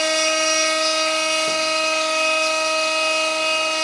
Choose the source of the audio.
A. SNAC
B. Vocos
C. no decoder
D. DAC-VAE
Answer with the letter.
C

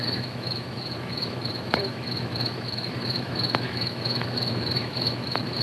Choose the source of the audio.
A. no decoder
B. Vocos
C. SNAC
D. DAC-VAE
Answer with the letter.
D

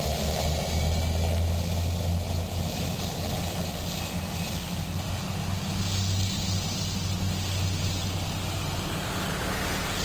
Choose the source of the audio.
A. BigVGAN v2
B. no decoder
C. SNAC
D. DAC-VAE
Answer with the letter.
B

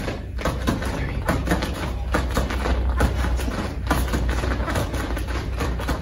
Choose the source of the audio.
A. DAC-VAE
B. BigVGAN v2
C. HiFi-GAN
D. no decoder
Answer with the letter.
D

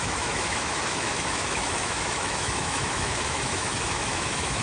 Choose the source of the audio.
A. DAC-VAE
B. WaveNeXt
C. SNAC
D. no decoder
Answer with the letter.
A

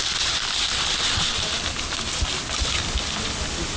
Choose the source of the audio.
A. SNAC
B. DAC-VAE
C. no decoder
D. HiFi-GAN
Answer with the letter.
C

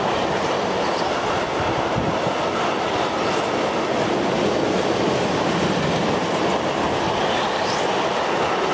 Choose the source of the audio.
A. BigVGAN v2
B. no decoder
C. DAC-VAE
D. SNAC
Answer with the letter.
B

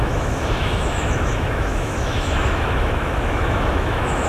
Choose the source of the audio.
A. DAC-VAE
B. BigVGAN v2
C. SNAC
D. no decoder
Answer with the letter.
A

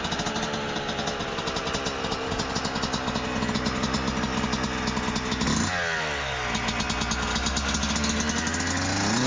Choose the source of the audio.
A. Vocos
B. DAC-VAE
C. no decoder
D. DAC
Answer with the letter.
C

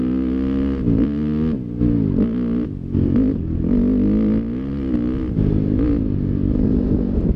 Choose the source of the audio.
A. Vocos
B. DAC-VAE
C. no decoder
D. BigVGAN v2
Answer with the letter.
C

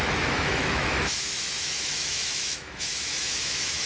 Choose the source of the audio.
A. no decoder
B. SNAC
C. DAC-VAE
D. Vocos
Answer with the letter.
C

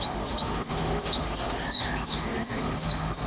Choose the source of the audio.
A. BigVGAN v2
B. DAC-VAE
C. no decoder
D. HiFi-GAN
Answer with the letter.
B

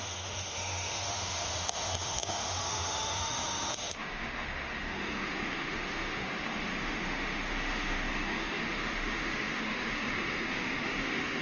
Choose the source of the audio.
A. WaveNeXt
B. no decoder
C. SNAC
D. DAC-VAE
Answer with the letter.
D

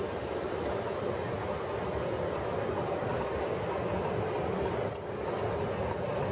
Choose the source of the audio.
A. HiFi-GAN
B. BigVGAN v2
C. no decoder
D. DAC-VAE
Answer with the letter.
C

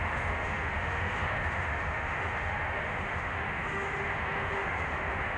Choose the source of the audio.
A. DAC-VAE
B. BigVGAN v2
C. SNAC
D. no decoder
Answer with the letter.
A